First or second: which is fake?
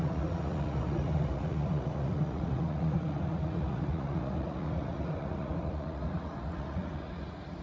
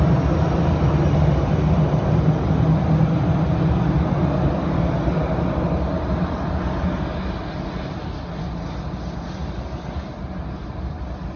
first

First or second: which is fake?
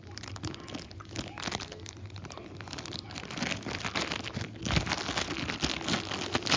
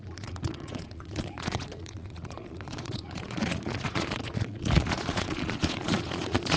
second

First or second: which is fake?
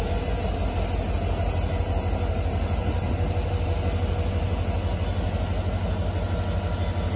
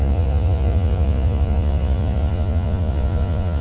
second